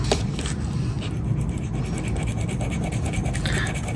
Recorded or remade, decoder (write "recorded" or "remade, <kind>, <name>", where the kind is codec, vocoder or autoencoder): recorded